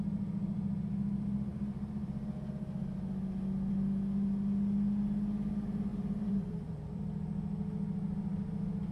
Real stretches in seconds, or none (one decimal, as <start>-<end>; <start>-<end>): 0.0-5.9; 7.0-8.9